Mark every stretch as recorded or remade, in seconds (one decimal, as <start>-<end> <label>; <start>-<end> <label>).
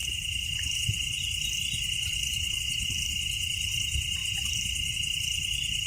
0.0-5.9 recorded